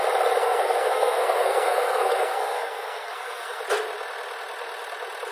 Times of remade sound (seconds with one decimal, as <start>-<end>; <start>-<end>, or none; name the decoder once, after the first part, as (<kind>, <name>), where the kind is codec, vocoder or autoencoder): 0.4-3.6 (codec, SNAC)